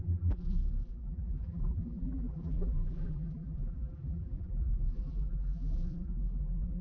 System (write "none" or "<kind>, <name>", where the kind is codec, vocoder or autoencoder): vocoder, BigVGAN v2